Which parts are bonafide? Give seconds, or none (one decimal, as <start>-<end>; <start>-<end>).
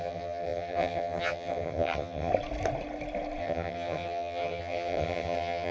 2.3-3.4